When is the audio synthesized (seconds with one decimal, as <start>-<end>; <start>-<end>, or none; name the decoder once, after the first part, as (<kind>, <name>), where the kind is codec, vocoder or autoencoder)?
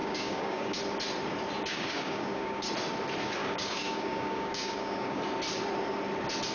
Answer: 0.0-0.8 (codec, DAC); 1.7-2.7; 3.4-5.2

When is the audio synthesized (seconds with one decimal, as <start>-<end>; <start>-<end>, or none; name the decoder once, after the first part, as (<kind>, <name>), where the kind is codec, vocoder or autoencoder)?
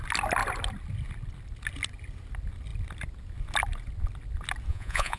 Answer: 4.7-5.2 (vocoder, Vocos)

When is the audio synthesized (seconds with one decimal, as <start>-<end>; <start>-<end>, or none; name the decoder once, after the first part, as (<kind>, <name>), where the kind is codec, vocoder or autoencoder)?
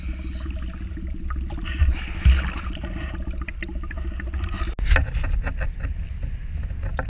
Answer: none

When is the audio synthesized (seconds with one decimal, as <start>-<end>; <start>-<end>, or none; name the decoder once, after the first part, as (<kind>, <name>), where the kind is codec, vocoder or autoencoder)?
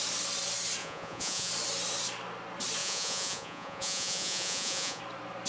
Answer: 0.8-1.5 (vocoder, Vocos); 2.8-5.0